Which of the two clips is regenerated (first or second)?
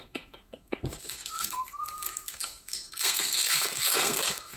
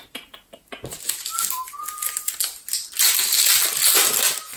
first